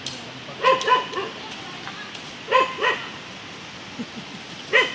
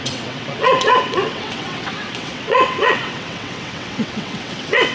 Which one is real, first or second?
first